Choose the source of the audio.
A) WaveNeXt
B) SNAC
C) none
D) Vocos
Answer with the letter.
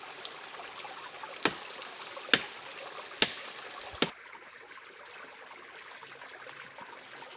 C